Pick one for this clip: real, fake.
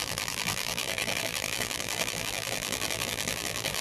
fake